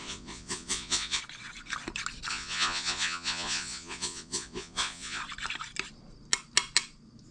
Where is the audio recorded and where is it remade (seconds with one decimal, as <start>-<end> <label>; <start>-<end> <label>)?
0.0-1.2 remade; 1.2-2.3 recorded; 2.3-5.2 remade; 5.2-7.3 recorded

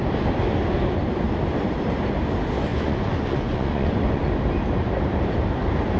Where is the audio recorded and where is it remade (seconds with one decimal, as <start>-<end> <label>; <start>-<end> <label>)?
0.0-2.7 recorded; 2.7-4.3 remade; 4.3-6.0 recorded

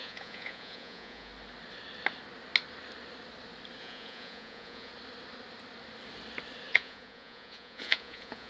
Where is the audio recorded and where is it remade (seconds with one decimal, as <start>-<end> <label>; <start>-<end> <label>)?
0.0-1.3 remade; 1.3-3.8 recorded; 3.8-4.9 remade; 4.9-6.7 recorded; 6.7-8.5 remade

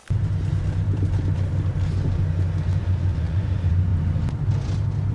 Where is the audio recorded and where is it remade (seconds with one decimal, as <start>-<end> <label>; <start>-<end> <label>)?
0.0-3.1 recorded; 3.1-3.9 remade; 3.9-5.1 recorded

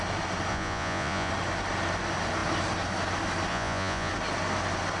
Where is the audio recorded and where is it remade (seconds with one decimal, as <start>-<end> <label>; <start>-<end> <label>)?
0.0-0.5 recorded; 0.5-1.3 remade; 1.3-3.5 recorded; 3.5-4.1 remade; 4.1-5.0 recorded